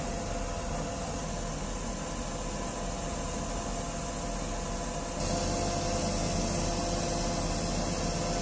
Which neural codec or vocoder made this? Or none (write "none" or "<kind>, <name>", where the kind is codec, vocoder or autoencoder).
none